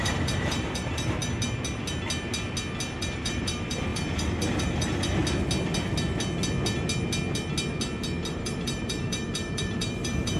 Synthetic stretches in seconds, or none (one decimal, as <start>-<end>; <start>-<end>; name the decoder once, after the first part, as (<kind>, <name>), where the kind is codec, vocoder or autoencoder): 0.0-1.2 (vocoder, BigVGAN v2); 3.0-5.2; 8.3-10.4